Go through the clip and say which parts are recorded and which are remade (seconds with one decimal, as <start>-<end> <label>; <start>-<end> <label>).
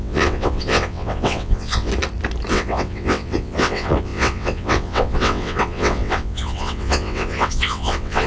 0.0-1.9 remade; 1.9-2.5 recorded; 2.5-8.3 remade